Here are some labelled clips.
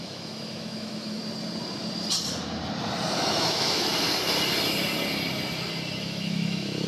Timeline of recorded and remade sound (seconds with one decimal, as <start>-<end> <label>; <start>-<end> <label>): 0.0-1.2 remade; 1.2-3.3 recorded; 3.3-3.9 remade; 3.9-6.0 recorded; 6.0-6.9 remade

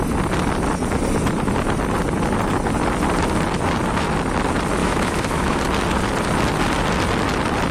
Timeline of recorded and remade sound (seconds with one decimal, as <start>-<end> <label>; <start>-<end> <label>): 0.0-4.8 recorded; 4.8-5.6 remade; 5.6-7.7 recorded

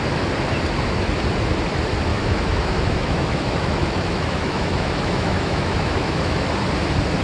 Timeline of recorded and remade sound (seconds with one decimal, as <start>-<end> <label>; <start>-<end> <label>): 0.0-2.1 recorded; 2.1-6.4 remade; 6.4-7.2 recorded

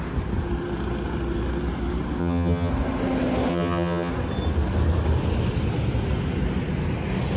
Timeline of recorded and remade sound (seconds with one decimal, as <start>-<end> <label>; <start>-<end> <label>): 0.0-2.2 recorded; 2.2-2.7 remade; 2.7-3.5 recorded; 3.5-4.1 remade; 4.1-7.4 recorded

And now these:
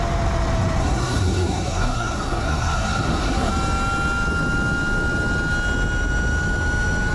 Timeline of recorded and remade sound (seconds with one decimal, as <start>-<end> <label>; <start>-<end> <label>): 0.0-0.8 recorded; 0.8-3.5 remade; 3.5-7.1 recorded

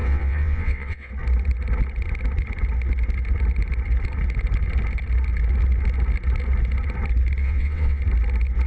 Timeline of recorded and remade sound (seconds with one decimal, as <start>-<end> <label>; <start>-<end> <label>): 0.0-1.1 remade; 1.1-7.4 recorded; 7.4-8.0 remade; 8.0-8.7 recorded